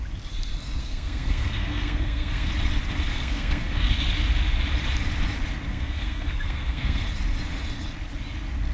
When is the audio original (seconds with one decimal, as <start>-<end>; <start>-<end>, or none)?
0.0-0.8; 2.5-3.1; 3.9-5.7; 7.0-8.7